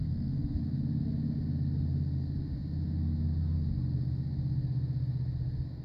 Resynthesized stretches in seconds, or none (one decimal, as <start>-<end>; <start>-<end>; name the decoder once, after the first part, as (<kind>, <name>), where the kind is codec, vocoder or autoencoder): 0.0-0.6 (codec, SNAC)